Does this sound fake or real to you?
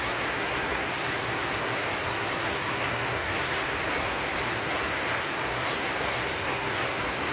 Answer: fake